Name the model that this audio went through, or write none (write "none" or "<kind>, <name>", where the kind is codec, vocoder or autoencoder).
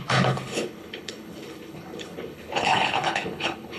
codec, HILCodec